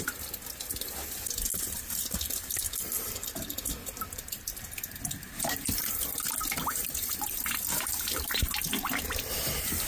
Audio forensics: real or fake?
real